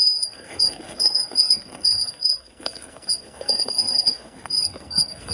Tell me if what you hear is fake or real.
fake